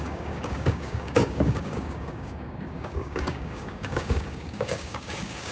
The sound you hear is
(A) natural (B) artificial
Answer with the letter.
B